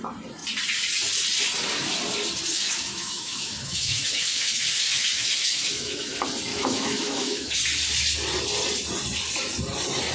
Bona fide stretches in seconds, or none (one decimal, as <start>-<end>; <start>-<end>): 0.0-2.5; 6.1-6.5; 7.6-10.1